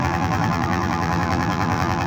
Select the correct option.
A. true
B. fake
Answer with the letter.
B